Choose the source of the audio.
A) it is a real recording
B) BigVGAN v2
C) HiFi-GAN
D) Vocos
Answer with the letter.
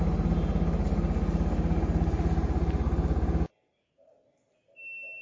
A